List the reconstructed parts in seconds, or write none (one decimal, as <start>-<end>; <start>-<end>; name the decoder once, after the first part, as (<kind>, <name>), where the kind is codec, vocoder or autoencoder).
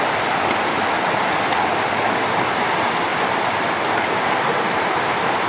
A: none